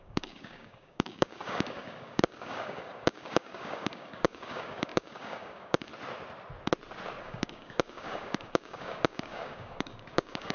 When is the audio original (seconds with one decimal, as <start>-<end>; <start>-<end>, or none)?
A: 5.9-7.2